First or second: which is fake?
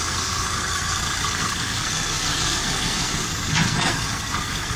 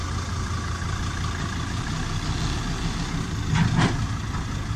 first